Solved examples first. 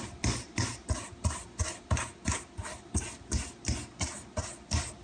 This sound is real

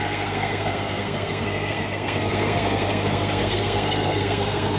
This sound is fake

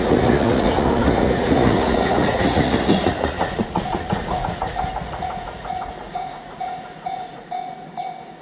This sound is fake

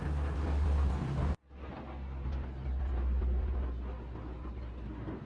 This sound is real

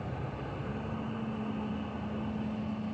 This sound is real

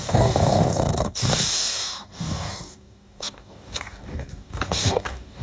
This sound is fake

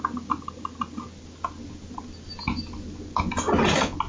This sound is real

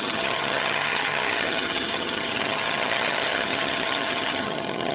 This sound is fake